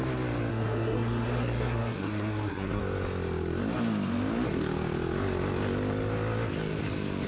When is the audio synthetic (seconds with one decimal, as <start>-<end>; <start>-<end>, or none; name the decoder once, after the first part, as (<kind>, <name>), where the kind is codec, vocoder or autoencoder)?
0.5-2.8 (codec, SNAC)